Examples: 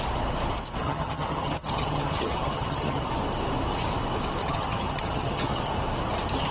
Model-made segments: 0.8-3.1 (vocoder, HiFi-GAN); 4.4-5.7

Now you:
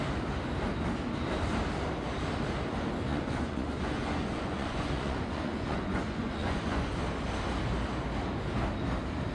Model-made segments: 3.1-7.0 (vocoder, Vocos)

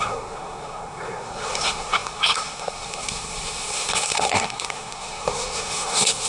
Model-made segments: 0.0-6.3 (codec, SNAC)